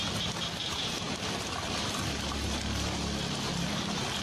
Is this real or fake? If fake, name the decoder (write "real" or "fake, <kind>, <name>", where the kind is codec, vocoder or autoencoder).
real